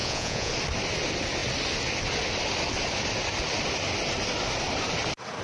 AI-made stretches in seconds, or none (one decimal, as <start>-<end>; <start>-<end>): 0.0-0.5